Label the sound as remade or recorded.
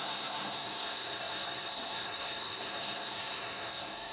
remade